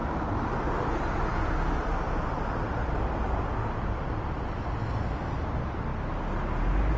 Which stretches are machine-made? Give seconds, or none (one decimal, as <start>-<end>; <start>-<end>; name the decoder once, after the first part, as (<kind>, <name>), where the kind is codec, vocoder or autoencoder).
0.7-5.9 (vocoder, BigVGAN v2)